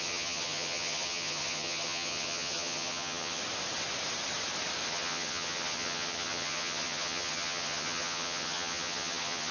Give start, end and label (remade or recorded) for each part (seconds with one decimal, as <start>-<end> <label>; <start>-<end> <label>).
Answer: 0.0-3.4 remade; 3.4-4.9 recorded; 4.9-9.5 remade